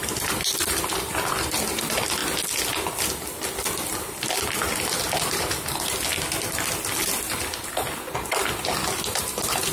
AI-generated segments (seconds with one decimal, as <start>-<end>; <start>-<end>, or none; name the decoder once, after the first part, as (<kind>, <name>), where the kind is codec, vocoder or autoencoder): none